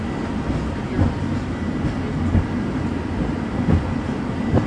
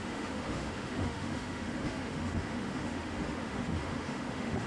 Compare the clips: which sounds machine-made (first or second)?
second